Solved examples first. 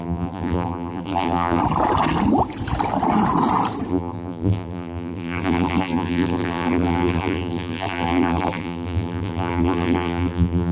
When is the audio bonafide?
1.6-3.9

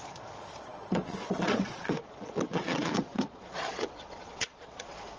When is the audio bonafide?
none

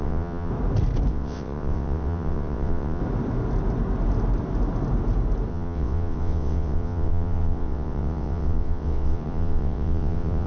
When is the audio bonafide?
0.5-1.1; 3.0-5.5